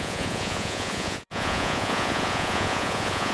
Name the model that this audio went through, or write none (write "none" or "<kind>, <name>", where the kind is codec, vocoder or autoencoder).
vocoder, Vocos